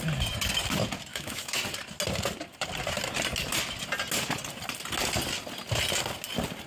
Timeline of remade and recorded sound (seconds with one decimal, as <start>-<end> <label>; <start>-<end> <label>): 0.0-1.1 recorded; 1.1-1.6 remade; 1.6-6.7 recorded